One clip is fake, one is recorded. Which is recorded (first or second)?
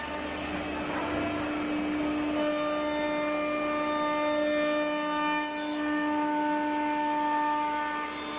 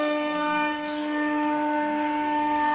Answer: first